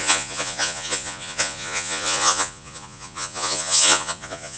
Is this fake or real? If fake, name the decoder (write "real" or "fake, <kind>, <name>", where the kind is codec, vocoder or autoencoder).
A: fake, vocoder, Vocos